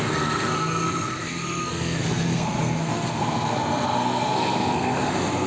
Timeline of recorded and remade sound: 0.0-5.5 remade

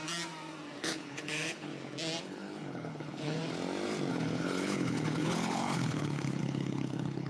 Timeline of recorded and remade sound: 0.0-0.8 recorded; 0.8-1.7 remade; 1.7-2.2 recorded; 2.2-3.4 remade; 3.4-4.1 recorded; 4.1-7.3 remade

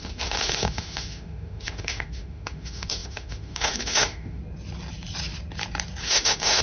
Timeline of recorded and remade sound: 0.0-4.4 remade; 4.4-6.0 recorded; 6.0-6.6 remade

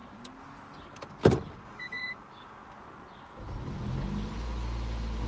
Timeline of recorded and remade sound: 0.0-1.5 recorded; 1.5-2.6 remade; 2.6-5.3 recorded